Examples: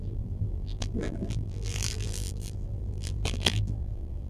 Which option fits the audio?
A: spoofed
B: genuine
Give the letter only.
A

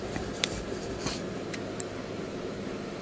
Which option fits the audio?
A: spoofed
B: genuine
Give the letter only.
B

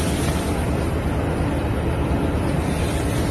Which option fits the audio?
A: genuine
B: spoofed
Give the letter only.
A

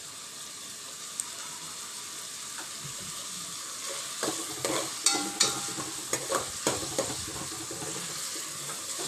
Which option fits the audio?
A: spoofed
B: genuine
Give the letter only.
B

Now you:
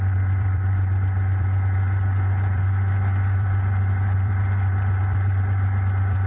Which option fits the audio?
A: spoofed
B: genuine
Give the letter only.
B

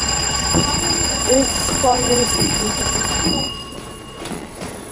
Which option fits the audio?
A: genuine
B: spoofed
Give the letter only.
B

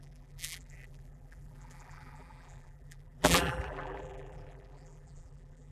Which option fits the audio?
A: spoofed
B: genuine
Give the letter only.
A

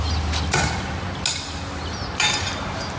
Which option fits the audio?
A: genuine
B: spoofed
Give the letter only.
A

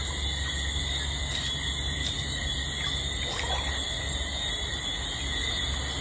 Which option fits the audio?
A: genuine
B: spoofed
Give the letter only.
A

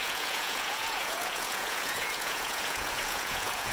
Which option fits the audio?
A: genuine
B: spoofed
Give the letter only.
B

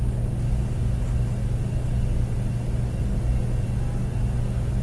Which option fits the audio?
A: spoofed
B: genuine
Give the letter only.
B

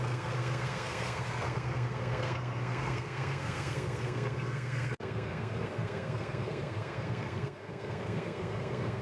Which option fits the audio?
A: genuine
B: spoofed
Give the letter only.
B